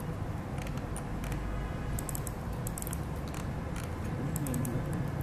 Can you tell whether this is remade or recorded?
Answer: recorded